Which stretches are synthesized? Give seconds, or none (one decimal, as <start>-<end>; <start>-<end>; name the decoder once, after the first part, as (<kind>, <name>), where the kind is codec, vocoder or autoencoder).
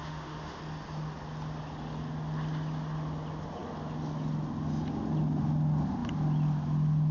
0.0-0.6 (autoencoder, DAC-VAE)